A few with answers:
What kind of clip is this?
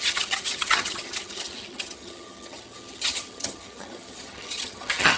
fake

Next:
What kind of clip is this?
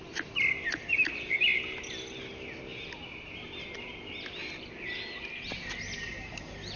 real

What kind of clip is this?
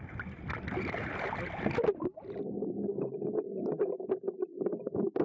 real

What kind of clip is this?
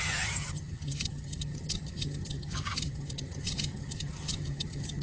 fake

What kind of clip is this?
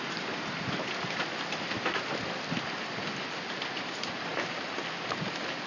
real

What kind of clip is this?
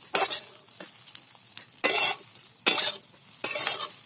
real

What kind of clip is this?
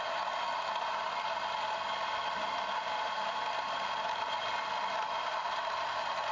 real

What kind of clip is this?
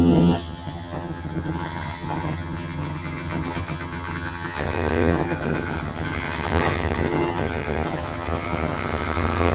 fake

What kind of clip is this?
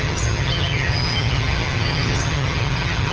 fake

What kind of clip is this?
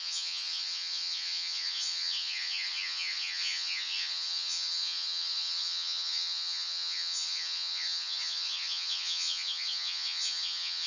fake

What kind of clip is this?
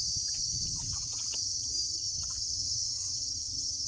fake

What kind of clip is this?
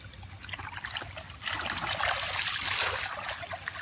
real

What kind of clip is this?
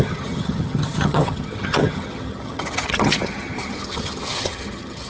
fake